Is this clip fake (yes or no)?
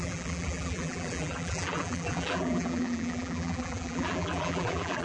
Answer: yes